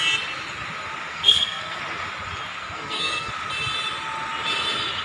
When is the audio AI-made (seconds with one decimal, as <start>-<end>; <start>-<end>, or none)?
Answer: 1.1-1.8; 2.5-3.3